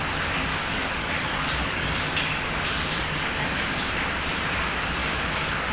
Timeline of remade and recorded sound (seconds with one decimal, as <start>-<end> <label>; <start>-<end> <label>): 0.0-0.5 recorded; 0.5-3.9 remade; 3.9-5.0 recorded; 5.0-5.7 remade